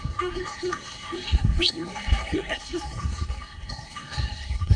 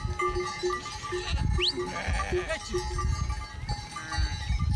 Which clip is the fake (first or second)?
first